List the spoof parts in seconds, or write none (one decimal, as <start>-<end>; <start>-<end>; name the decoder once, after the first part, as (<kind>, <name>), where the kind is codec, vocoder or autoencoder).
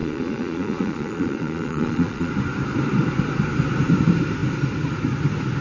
0.0-2.3 (vocoder, Vocos)